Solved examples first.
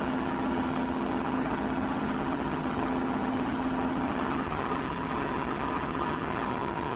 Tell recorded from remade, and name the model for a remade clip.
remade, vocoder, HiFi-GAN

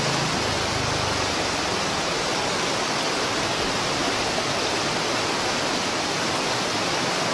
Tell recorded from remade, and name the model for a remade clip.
recorded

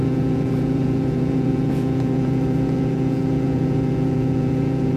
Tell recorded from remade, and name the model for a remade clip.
remade, vocoder, Vocos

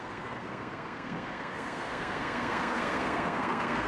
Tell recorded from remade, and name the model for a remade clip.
remade, codec, SNAC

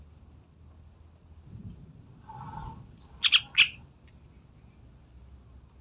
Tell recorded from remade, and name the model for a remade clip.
recorded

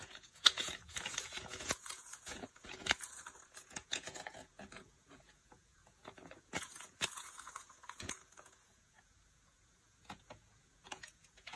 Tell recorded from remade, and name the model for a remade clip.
remade, vocoder, Vocos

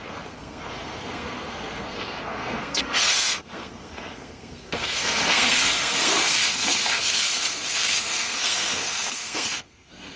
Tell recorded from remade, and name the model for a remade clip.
remade, codec, SNAC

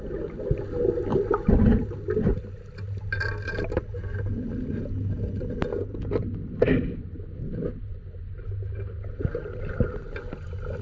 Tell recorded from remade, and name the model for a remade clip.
recorded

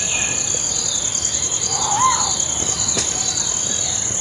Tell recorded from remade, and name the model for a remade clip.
recorded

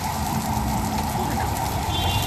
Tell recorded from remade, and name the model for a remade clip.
remade, vocoder, BigVGAN v2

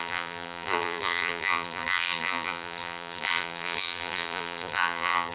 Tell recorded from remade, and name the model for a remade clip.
remade, vocoder, BigVGAN v2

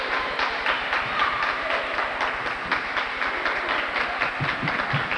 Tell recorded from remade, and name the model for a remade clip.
recorded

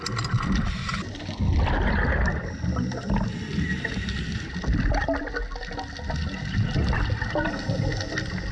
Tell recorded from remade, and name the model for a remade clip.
recorded